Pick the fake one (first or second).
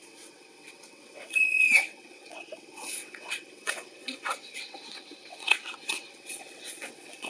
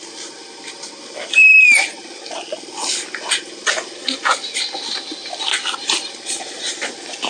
first